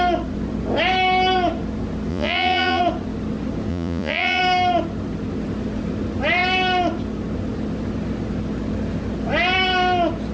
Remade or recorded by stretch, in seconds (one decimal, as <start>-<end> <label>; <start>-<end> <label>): 0.0-2.1 recorded; 2.1-2.8 remade; 2.8-3.7 recorded; 3.7-4.4 remade; 4.4-10.3 recorded